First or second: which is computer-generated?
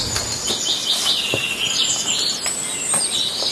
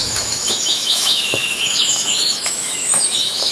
second